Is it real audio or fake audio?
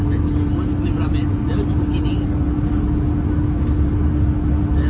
real